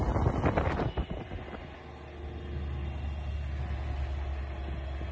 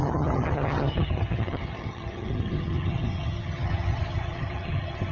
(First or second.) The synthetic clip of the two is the second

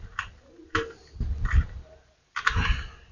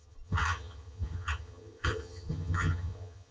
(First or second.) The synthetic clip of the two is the second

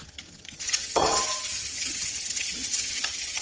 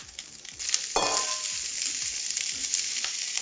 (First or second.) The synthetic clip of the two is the first